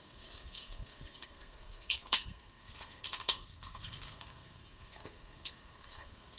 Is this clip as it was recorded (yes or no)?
no